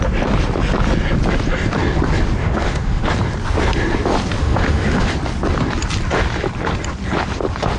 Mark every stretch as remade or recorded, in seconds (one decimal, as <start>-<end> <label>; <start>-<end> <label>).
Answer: 0.0-2.4 recorded; 2.4-3.1 remade; 3.1-4.4 recorded; 4.4-5.1 remade; 5.1-7.8 recorded